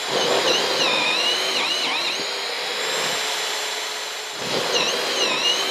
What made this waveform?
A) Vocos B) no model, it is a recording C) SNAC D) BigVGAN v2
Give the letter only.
D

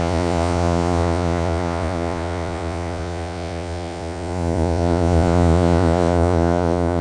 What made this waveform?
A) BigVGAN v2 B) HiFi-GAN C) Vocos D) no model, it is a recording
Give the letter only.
C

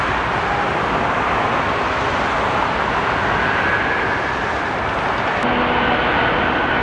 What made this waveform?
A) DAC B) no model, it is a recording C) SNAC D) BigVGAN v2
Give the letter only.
B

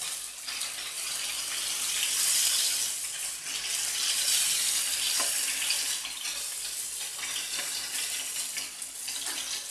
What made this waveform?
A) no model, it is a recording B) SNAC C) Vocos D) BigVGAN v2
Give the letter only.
A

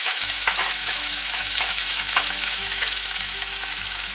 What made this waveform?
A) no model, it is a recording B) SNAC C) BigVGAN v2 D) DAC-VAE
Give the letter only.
D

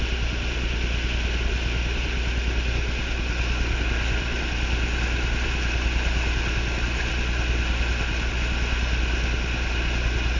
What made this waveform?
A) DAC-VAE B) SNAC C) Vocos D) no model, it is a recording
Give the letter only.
D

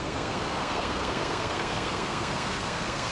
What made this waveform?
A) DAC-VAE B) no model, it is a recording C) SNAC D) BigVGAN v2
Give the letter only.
C